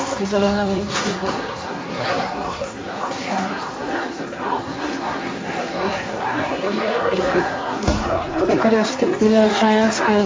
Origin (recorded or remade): remade